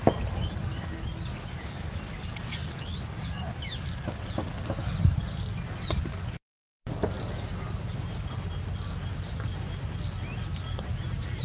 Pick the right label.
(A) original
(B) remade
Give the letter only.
B